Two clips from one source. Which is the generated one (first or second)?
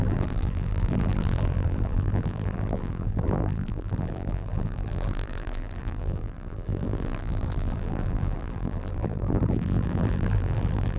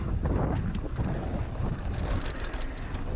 first